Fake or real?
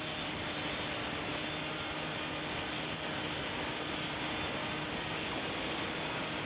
real